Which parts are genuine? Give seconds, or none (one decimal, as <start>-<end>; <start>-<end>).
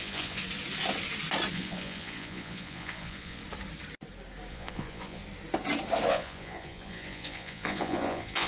0.4-1.5; 3.4-4.5; 5.2-6.1